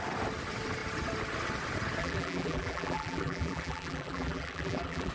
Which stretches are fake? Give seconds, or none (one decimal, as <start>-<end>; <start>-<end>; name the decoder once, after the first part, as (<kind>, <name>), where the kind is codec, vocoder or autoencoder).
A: 2.0-5.1 (vocoder, BigVGAN v2)